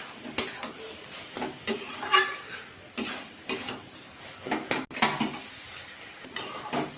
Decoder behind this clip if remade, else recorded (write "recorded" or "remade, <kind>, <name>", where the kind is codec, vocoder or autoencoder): recorded